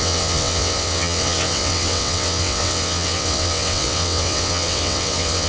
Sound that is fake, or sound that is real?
fake